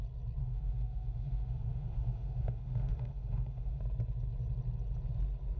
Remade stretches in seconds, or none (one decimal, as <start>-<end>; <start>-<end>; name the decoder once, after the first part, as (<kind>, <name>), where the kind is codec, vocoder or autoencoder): 0.4-3.8 (autoencoder, DAC-VAE)